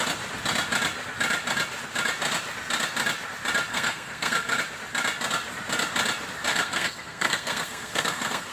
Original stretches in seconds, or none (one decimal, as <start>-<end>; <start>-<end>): 0.0-3.7; 4.6-6.5